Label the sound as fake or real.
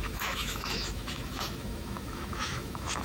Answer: fake